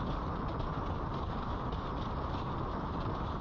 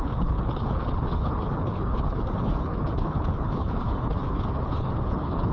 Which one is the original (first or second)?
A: first